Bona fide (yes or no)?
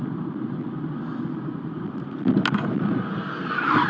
yes